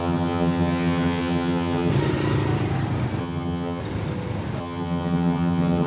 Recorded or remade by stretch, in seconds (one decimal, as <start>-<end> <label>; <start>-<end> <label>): 0.0-1.9 remade; 1.9-3.2 recorded; 3.2-3.8 remade; 3.8-4.6 recorded; 4.6-5.9 remade